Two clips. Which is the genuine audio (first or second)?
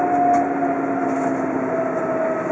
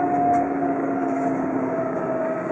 first